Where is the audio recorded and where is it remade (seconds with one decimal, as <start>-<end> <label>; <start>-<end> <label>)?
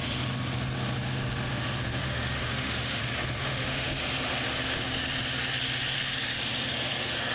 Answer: 0.0-2.0 recorded; 2.0-3.0 remade; 3.0-3.4 recorded; 3.4-4.0 remade; 4.0-7.3 recorded